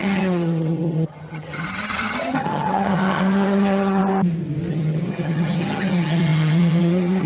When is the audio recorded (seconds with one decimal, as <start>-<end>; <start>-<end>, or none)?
4.0-4.7